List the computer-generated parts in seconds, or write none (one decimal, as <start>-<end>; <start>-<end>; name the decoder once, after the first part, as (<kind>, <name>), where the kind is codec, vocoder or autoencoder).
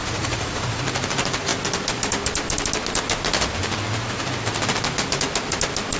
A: 0.0-0.8 (vocoder, Vocos)